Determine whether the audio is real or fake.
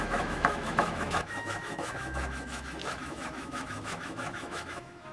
fake